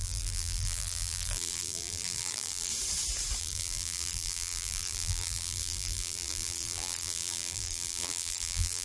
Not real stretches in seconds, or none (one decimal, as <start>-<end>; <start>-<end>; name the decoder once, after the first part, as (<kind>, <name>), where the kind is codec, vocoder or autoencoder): 0.0-2.7 (vocoder, BigVGAN v2); 3.4-8.8